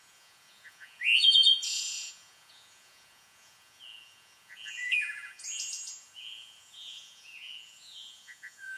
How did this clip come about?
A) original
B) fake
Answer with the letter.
B